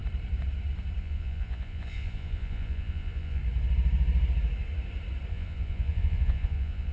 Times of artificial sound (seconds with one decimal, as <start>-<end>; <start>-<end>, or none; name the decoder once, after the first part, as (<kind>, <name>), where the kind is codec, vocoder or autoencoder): 1.0-3.4 (vocoder, Vocos); 5.3-6.9